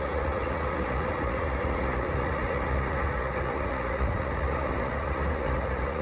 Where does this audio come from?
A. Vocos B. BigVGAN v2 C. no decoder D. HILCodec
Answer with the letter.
A